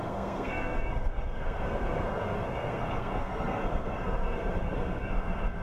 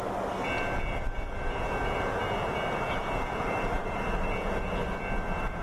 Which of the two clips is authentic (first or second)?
second